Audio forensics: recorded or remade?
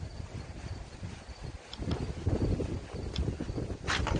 recorded